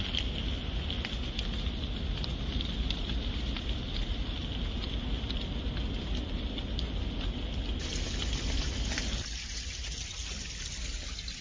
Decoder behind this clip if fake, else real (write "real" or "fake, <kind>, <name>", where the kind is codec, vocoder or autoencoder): real